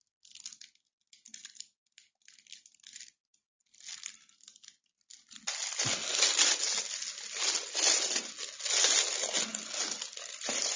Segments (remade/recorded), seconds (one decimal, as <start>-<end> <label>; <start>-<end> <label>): 0.0-10.8 recorded